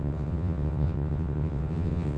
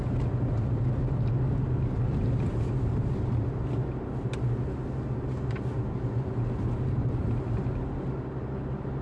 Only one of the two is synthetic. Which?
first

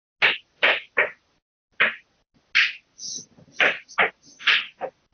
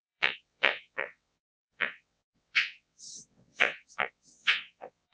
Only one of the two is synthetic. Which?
second